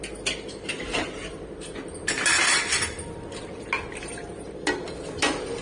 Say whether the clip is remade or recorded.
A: recorded